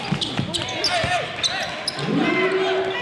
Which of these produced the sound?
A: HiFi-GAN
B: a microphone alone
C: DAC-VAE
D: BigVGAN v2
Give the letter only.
B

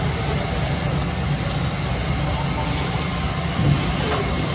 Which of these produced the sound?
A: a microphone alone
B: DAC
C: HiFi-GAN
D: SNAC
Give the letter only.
A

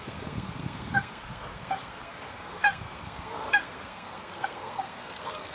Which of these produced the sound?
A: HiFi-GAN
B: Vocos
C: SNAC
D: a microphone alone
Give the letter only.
C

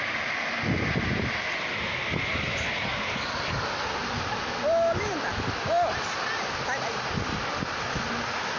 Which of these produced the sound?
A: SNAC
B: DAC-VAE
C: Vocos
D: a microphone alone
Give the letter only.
D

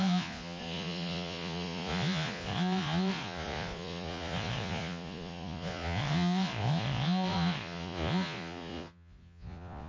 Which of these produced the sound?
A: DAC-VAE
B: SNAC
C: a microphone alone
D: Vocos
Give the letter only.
D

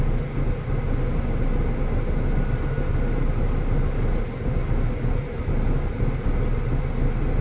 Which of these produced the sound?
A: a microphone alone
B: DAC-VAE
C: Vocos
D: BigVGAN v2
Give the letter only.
A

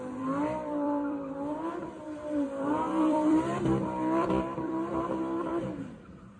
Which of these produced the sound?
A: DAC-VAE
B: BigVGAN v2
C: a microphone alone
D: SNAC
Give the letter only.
B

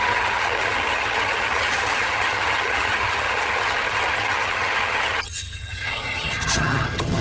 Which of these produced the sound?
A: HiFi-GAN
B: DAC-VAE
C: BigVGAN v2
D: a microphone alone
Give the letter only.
A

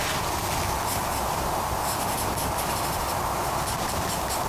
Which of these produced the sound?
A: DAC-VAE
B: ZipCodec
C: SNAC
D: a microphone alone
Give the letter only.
D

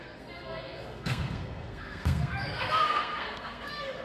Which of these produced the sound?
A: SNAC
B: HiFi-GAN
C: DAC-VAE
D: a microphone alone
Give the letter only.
A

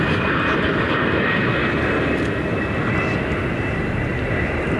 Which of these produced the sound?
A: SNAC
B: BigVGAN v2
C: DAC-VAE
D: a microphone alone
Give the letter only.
D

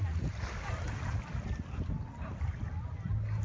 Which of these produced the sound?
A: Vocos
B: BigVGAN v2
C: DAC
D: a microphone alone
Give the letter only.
D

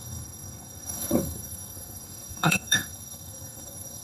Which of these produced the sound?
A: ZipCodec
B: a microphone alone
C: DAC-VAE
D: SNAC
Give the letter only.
D